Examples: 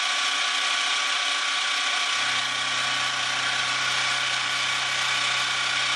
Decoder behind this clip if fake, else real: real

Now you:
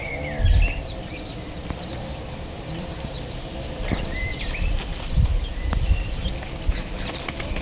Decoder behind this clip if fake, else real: fake, vocoder, BigVGAN v2